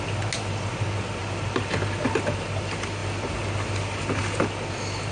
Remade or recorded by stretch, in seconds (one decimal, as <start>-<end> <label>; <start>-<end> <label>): 0.0-5.1 recorded